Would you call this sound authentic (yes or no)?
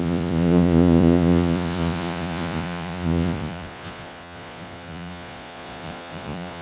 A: no